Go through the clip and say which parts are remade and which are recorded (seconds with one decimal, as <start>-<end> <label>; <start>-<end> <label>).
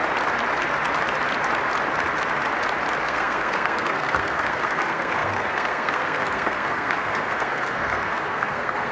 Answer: 0.0-3.0 recorded; 3.0-8.9 remade